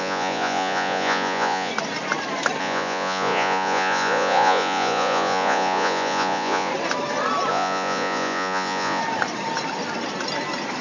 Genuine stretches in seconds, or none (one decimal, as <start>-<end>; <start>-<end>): 1.7-2.6; 6.7-7.5; 9.0-10.8